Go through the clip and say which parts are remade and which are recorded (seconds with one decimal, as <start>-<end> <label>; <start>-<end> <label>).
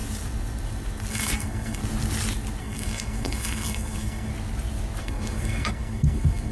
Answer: 0.0-1.1 recorded; 1.1-1.8 remade; 1.8-2.6 recorded; 2.6-4.3 remade; 4.3-5.0 recorded; 5.0-6.5 remade